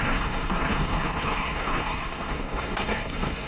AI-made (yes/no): yes